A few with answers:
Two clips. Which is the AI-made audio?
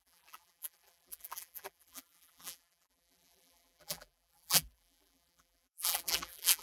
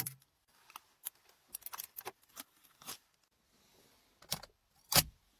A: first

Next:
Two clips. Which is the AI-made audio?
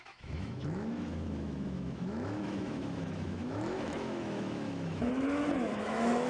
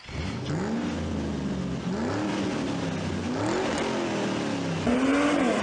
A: first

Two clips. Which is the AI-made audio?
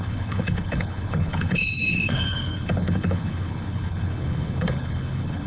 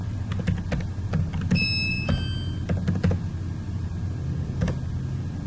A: first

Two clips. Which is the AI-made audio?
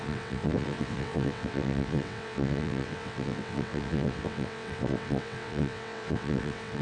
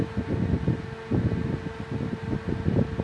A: first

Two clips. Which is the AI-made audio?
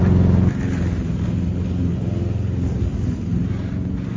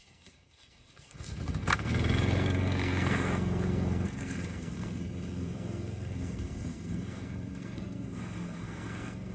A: second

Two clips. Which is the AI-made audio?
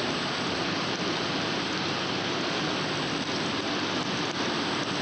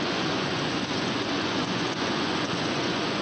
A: second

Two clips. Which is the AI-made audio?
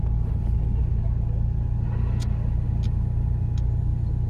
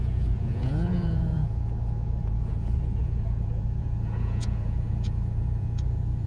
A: second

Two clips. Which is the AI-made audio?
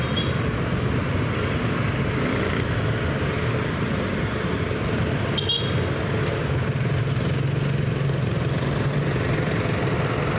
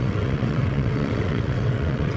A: second